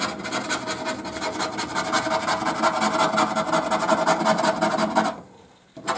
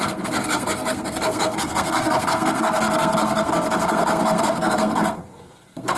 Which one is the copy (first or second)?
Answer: second